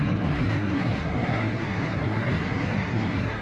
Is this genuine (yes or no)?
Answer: no